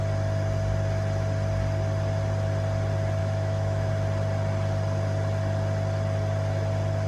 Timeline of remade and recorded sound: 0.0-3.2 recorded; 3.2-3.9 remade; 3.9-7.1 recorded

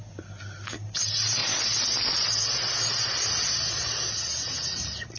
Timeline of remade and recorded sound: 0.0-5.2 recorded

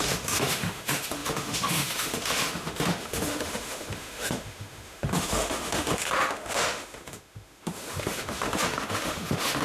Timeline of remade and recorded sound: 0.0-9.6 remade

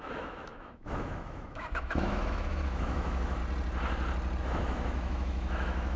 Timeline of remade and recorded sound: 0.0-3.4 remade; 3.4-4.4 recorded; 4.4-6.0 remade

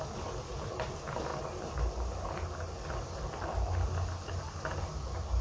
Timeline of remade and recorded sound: 0.0-5.4 recorded

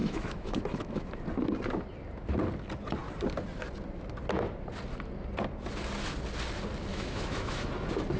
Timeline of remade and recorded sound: 0.0-1.1 remade; 1.1-6.9 recorded; 6.9-7.7 remade; 7.7-8.2 recorded

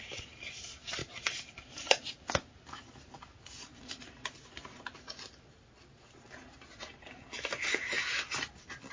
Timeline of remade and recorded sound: 0.0-8.9 recorded